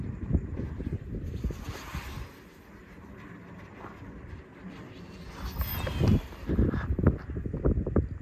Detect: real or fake real